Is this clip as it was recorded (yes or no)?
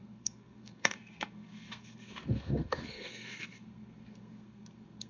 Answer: no